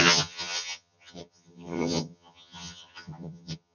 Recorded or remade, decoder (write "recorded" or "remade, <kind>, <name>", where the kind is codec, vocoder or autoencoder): remade, vocoder, HiFi-GAN